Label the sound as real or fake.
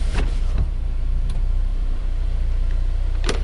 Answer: fake